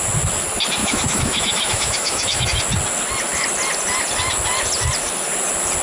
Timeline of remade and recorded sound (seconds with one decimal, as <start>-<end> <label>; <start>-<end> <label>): 0.0-0.8 recorded; 0.8-2.6 remade; 2.6-5.8 recorded